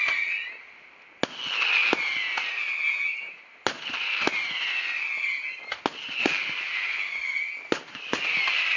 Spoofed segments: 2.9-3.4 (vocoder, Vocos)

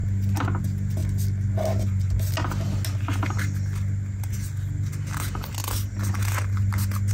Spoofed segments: none

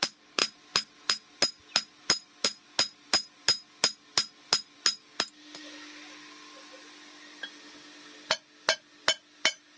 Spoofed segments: none

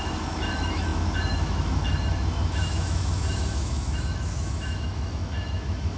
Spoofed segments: 0.0-6.0 (autoencoder, DAC-VAE)

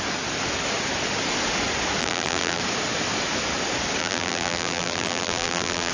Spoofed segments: 2.0-2.6 (vocoder, BigVGAN v2); 4.0-5.9

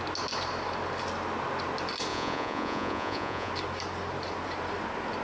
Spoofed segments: 2.1-3.5 (vocoder, Vocos)

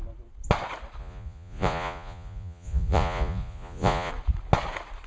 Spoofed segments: 1.0-4.1 (vocoder, Vocos)

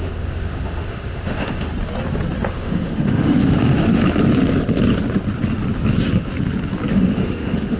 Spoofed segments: 0.0-1.7 (autoencoder, DAC-VAE); 2.5-4.0; 6.9-7.8